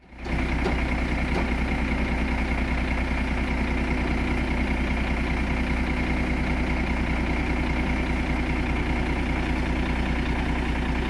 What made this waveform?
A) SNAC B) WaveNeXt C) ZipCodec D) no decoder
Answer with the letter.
D